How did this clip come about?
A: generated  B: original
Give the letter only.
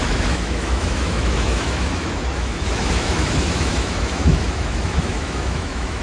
A